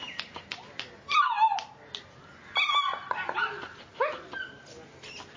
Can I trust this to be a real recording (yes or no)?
yes